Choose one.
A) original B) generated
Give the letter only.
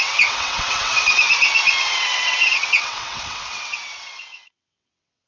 B